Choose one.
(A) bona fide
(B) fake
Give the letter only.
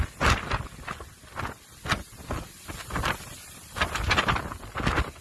A